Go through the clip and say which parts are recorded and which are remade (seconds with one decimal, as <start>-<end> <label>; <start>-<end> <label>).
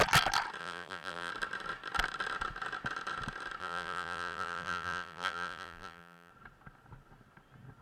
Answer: 0.0-0.6 recorded; 0.6-1.3 remade; 1.3-3.6 recorded; 3.6-6.3 remade; 6.3-7.8 recorded